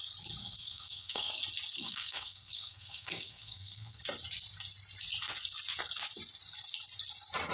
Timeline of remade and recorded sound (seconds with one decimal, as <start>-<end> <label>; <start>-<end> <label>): 0.0-0.4 recorded; 0.4-1.3 remade; 1.3-1.8 recorded; 1.8-4.0 remade; 4.0-7.5 recorded